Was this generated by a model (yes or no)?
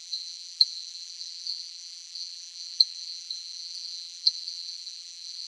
yes